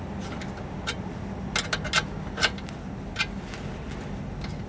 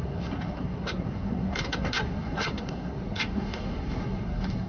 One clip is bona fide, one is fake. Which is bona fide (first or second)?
first